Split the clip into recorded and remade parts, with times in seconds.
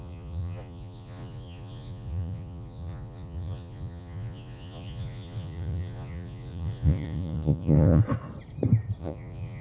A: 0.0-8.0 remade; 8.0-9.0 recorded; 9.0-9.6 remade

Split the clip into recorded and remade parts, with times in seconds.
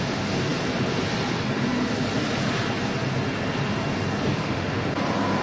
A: 0.0-4.4 recorded; 4.4-4.9 remade; 4.9-5.4 recorded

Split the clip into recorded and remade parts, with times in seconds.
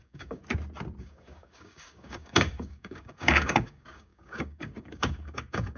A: 0.0-0.4 remade; 0.4-1.0 recorded; 1.0-5.8 remade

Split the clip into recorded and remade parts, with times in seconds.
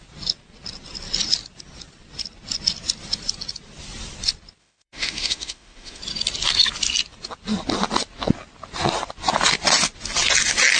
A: 0.0-4.6 recorded; 4.6-6.0 remade; 6.0-10.8 recorded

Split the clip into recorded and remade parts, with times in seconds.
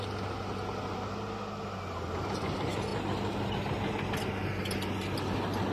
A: 0.0-5.7 recorded